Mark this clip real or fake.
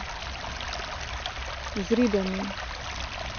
real